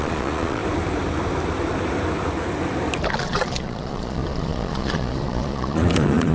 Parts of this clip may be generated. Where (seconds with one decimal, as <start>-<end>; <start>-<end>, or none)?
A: 0.0-0.6; 3.1-6.3